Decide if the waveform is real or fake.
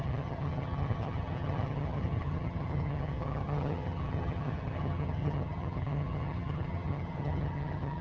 fake